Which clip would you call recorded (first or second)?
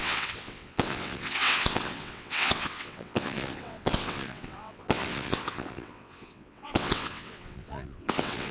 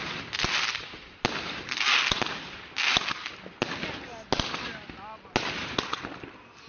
second